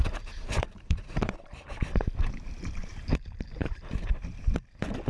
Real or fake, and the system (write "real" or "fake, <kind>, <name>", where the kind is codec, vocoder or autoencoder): fake, vocoder, BigVGAN v2